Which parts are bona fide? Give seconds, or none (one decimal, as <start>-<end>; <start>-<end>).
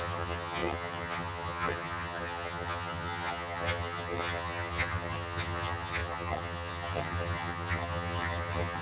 none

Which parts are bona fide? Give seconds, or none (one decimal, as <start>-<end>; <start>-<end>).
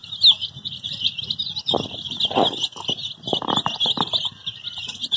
0.0-5.2